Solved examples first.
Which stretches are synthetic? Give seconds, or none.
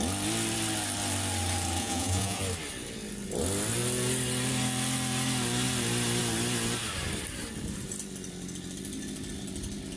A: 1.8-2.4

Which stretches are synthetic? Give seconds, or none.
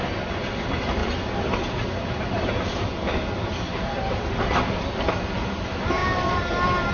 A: none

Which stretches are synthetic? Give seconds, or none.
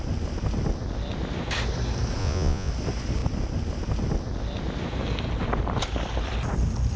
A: 2.2-2.7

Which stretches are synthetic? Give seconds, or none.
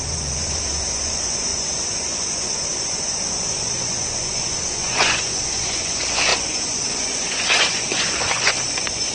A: 0.0-9.1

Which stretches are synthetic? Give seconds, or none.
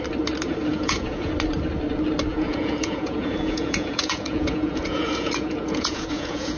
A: 0.7-1.3; 2.3-6.6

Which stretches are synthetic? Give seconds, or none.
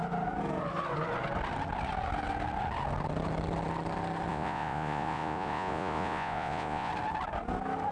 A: 4.3-6.9